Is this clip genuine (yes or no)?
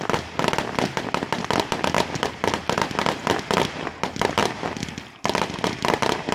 yes